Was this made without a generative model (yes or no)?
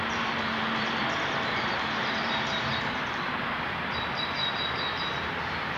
no